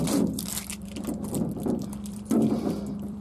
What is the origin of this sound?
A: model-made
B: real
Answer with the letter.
A